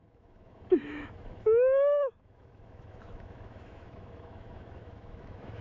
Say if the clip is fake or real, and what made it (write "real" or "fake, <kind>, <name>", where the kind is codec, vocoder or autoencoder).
fake, autoencoder, DAC-VAE